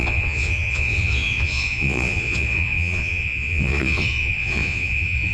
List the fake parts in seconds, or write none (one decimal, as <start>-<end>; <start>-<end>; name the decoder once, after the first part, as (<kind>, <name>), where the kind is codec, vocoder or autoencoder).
0.0-5.3 (vocoder, Vocos)